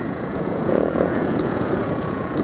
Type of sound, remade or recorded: remade